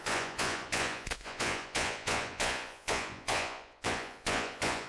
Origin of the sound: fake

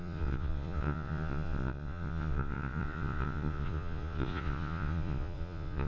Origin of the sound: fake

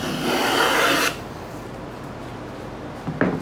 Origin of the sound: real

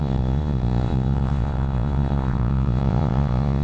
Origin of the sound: fake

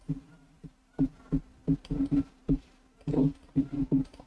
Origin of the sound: real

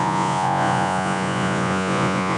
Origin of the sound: fake